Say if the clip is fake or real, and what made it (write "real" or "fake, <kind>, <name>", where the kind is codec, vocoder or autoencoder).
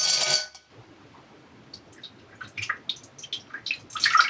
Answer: real